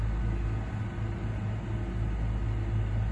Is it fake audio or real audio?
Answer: real